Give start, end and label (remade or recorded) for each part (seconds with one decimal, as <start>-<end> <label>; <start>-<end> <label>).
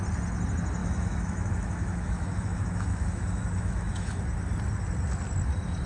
0.0-0.8 recorded; 0.8-4.2 remade; 4.2-5.9 recorded